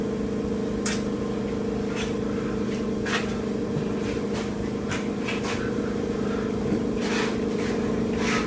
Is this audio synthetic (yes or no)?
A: no